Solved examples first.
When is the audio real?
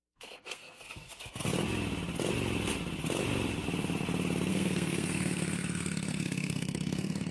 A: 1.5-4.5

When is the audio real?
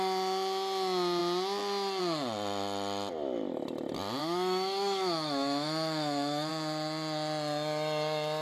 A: 0.0-4.2; 6.5-8.4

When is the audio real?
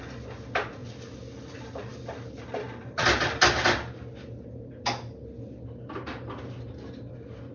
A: 0.0-7.5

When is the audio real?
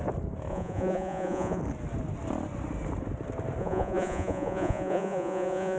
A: 0.0-0.5; 1.6-3.6